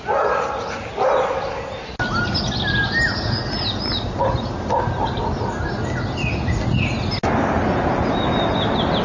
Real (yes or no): yes